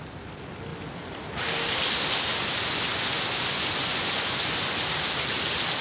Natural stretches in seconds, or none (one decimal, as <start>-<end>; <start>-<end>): 0.0-2.3; 4.9-5.8